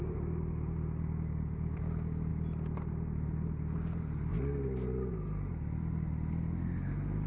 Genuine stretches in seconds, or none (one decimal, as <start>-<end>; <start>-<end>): 0.0-7.3